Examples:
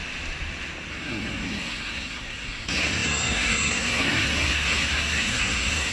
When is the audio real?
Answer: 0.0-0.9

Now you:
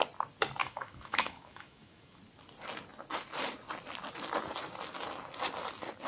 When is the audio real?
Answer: 0.0-0.6; 2.2-6.1

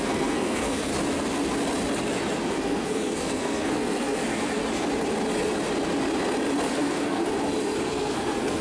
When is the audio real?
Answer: 0.9-2.6; 4.6-6.7; 7.2-7.9

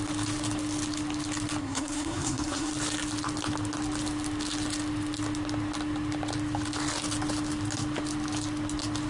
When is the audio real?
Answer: 0.0-1.6; 2.7-9.1

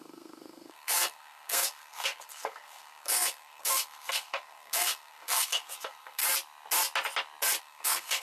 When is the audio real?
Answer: 6.2-7.6

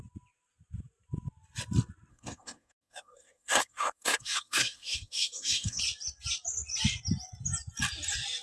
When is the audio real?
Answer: 0.0-2.1; 5.8-8.4